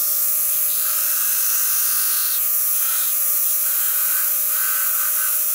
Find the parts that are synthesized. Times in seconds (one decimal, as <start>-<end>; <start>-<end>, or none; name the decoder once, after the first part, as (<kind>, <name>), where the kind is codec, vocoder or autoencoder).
2.2-4.0 (vocoder, BigVGAN v2)